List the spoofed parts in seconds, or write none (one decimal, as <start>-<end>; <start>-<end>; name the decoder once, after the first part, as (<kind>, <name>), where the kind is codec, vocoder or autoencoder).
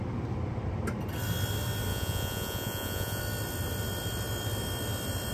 1.9-3.2 (vocoder, Vocos)